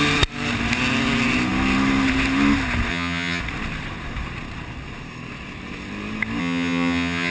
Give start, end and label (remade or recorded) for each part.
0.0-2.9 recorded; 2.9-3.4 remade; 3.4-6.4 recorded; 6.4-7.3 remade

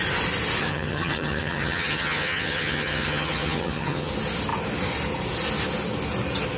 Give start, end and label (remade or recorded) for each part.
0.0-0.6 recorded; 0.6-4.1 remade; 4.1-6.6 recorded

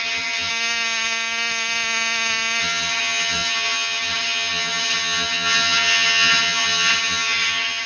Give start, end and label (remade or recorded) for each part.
0.0-0.5 remade; 0.5-2.6 recorded; 2.6-7.9 remade